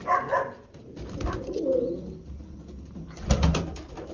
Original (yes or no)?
yes